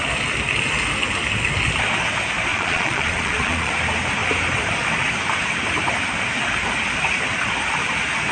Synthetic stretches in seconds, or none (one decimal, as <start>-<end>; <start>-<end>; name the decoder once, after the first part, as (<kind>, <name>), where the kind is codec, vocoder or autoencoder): 2.5-3.7 (vocoder, Vocos)